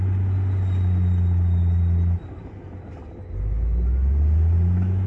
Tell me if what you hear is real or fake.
real